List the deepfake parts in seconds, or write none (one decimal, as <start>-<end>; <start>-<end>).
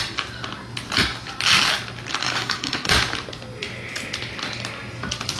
2.2-2.9